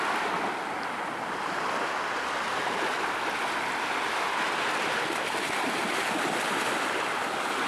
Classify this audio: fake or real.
real